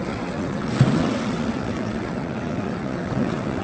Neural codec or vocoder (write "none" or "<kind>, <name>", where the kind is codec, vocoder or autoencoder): vocoder, WaveNeXt